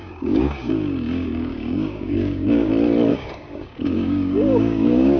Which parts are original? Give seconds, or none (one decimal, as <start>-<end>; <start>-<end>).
2.7-3.1